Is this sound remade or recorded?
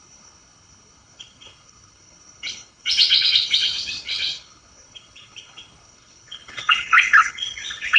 remade